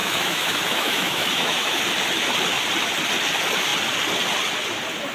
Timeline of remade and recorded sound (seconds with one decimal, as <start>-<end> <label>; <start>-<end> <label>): 0.0-1.8 remade; 1.8-5.1 recorded